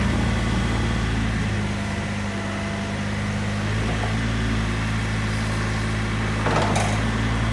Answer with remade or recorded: recorded